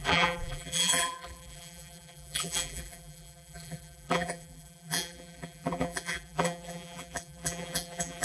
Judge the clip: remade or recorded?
remade